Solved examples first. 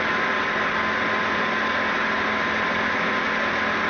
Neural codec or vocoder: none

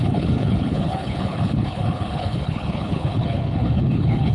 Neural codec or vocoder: codec, HILCodec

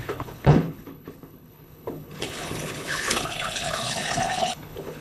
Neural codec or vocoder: codec, HILCodec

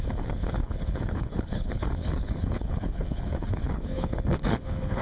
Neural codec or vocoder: codec, HILCodec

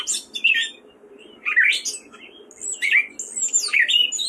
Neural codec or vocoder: none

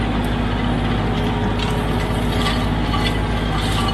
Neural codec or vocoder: none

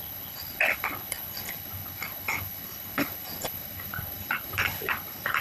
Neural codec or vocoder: codec, HILCodec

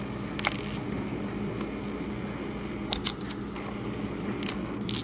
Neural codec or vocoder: none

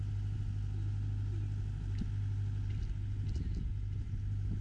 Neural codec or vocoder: none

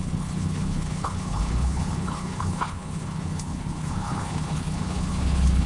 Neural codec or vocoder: codec, HILCodec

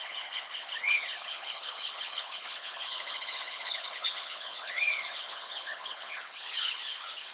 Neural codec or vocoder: codec, HILCodec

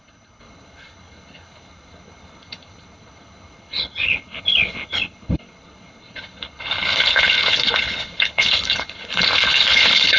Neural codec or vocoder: codec, HILCodec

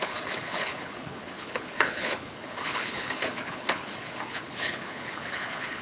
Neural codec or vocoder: codec, HILCodec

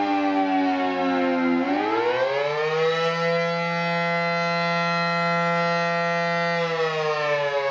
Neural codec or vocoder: none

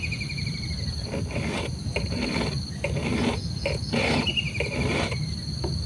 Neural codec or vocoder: none